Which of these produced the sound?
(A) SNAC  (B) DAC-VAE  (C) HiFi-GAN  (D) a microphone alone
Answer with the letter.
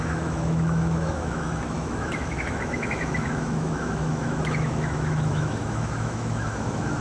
B